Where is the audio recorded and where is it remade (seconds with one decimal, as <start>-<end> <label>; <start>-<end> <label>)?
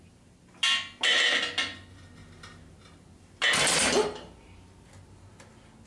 0.0-5.9 recorded